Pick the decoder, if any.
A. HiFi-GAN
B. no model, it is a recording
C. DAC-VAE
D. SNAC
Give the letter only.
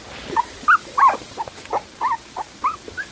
B